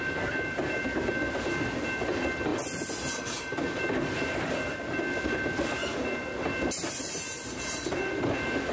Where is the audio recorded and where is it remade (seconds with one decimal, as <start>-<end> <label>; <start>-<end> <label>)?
0.0-8.7 recorded